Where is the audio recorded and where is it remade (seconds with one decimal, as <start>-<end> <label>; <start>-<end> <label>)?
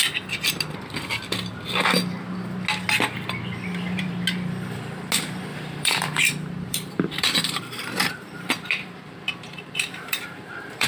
0.0-5.5 recorded; 5.5-10.9 remade